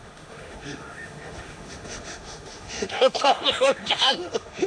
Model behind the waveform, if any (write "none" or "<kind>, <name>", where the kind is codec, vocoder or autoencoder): autoencoder, DAC-VAE